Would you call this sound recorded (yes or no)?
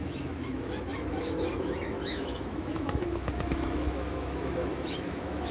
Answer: no